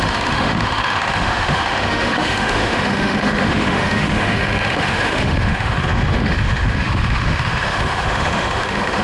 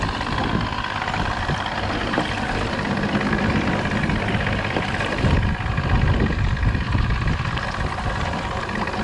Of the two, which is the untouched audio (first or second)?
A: second